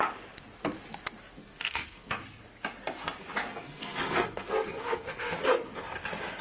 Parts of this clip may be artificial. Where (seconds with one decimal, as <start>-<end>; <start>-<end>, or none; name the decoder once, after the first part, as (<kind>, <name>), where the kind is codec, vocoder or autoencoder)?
1.4-2.2 (codec, SNAC); 3.5-5.4